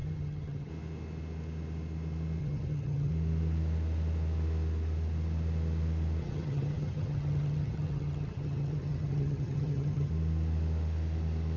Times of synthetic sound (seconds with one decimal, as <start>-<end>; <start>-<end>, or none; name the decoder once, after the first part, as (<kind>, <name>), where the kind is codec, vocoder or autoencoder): 0.0-0.7 (vocoder, HiFi-GAN); 2.4-3.1; 6.2-10.1